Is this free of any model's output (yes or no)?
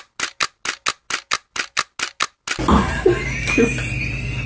yes